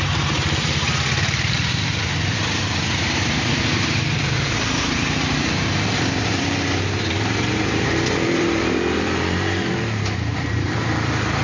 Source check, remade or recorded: remade